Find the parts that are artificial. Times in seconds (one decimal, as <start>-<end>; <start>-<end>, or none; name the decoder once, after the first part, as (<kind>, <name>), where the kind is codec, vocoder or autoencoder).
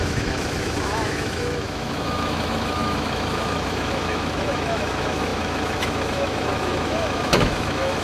0.0-8.0 (autoencoder, DAC-VAE)